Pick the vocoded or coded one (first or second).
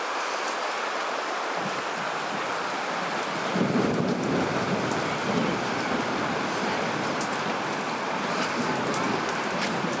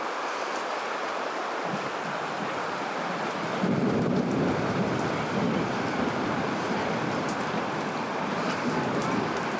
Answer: second